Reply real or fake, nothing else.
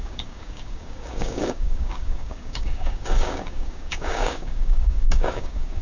fake